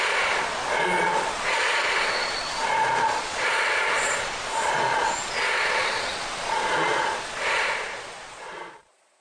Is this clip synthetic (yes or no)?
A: yes